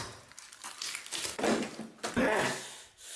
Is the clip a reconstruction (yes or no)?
no